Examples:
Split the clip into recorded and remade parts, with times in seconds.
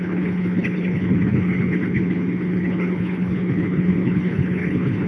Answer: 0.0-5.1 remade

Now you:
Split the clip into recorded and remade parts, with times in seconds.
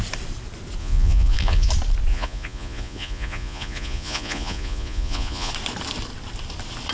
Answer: 0.0-0.8 recorded; 0.8-1.7 remade; 1.7-2.1 recorded; 2.1-5.5 remade; 5.5-6.9 recorded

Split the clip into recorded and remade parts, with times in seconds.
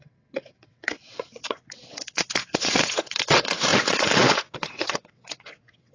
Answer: 0.0-5.9 remade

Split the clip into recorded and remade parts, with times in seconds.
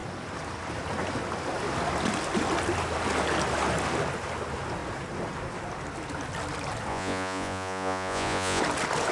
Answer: 0.0-6.9 recorded; 6.9-8.6 remade; 8.6-9.1 recorded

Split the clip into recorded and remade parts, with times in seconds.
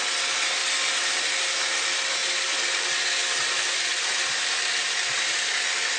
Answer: 0.0-2.2 recorded; 2.2-2.8 remade; 2.8-3.2 recorded; 3.2-4.1 remade; 4.1-6.0 recorded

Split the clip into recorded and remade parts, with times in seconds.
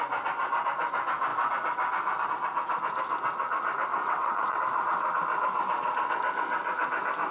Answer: 0.0-4.0 recorded; 4.0-4.6 remade; 4.6-7.3 recorded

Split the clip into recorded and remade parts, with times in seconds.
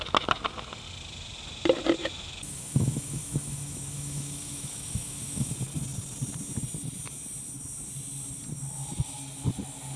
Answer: 0.0-2.0 recorded; 2.0-5.5 remade; 5.5-10.0 recorded